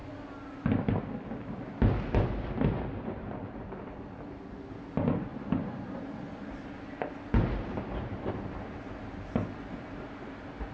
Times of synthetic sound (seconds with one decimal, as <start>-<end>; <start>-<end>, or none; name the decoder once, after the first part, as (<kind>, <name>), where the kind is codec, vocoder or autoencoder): none